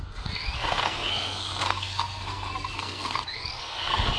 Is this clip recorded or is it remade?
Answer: remade